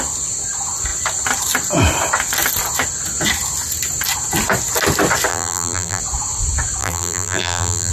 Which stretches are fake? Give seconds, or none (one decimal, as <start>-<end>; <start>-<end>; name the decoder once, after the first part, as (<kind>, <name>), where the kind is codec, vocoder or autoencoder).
5.3-6.0 (vocoder, BigVGAN v2); 6.8-7.9